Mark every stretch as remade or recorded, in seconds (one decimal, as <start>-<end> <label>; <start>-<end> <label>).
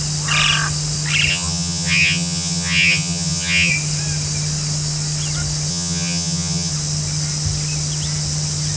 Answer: 0.0-1.3 recorded; 1.3-3.7 remade; 3.7-5.7 recorded; 5.7-6.7 remade; 6.7-8.8 recorded